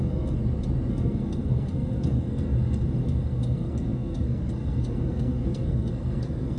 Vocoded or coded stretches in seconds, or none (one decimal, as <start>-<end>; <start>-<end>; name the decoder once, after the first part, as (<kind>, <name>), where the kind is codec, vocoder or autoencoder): 0.0-0.4 (codec, SNAC); 0.9-6.6